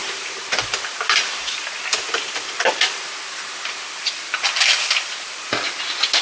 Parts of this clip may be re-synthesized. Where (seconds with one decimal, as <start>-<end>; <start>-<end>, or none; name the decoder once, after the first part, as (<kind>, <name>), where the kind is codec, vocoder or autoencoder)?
0.0-6.2 (vocoder, BigVGAN v2)